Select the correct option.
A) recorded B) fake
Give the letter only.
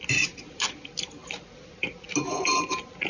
A